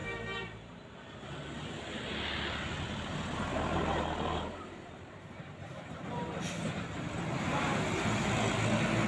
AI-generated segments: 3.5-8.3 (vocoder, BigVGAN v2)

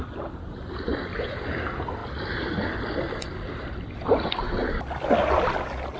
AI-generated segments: 0.0-6.0 (vocoder, BigVGAN v2)

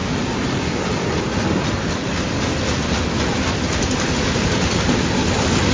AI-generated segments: 2.0-2.6 (vocoder, BigVGAN v2)

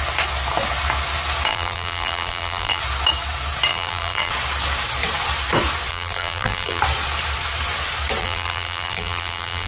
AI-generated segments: 1.5-2.8 (vocoder, BigVGAN v2); 3.7-4.3; 5.9-6.8; 8.2-9.7

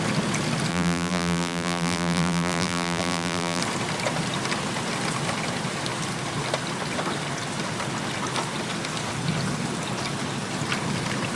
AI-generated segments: 0.7-3.6 (vocoder, BigVGAN v2)

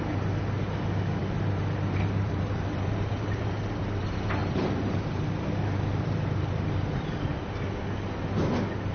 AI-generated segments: 1.2-4.0 (vocoder, BigVGAN v2); 4.4-7.4

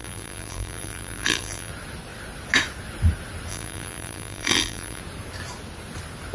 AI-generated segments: 0.0-1.7 (vocoder, BigVGAN v2); 3.5-5.0